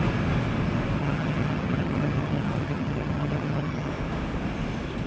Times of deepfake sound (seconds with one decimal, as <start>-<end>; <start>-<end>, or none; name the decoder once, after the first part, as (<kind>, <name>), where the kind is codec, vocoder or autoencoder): 1.0-3.9 (vocoder, HiFi-GAN)